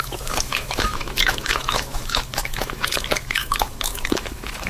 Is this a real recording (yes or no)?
no